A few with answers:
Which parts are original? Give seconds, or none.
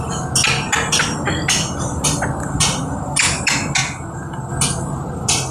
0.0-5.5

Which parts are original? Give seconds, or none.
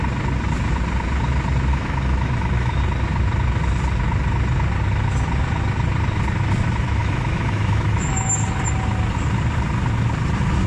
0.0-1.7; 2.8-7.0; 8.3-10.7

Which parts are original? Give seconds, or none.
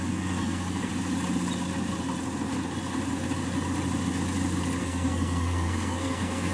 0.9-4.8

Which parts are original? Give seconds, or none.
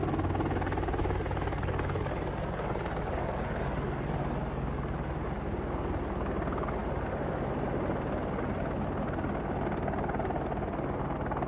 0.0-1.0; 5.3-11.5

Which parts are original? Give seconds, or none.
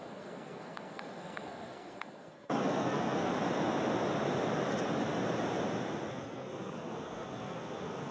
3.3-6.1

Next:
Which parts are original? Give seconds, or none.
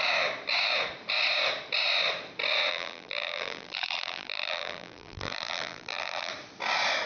0.0-2.7; 6.3-7.1